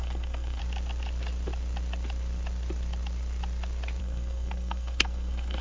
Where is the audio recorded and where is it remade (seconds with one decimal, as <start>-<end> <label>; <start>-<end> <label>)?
0.0-0.6 remade; 0.6-4.0 recorded; 4.0-5.6 remade